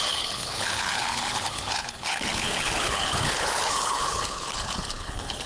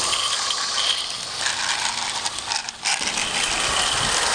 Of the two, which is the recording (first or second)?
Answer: second